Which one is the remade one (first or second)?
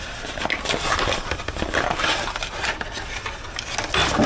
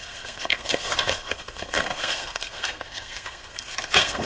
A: second